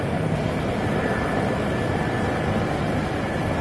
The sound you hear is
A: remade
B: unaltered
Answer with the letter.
A